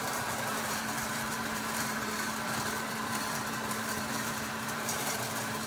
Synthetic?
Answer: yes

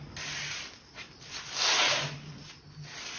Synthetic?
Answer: no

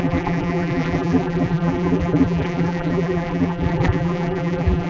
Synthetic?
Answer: yes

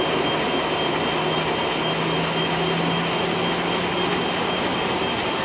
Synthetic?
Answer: no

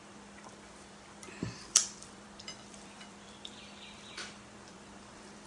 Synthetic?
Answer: yes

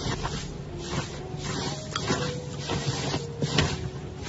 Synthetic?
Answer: no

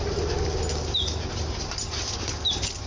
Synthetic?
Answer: no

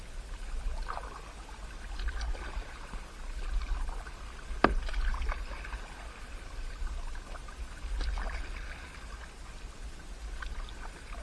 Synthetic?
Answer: no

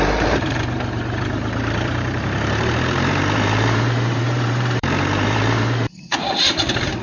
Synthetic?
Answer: yes